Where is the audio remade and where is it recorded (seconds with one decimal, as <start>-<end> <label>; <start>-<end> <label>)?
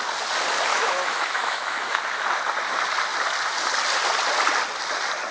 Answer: 0.0-0.7 recorded; 0.7-2.0 remade; 2.0-5.3 recorded